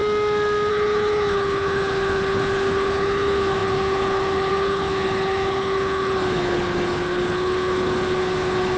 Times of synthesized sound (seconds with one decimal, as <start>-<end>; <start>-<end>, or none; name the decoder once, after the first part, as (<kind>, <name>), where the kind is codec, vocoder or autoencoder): 0.7-8.8 (codec, HILCodec)